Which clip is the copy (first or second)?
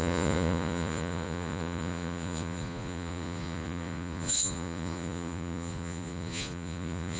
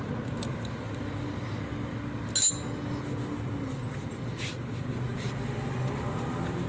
first